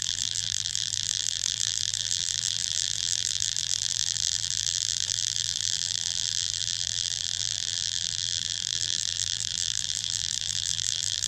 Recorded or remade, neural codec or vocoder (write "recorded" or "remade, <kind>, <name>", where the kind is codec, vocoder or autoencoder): remade, vocoder, BigVGAN v2